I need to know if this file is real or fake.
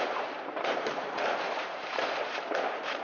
fake